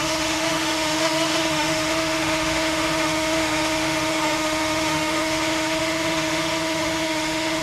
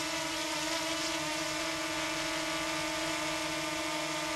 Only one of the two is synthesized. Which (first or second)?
first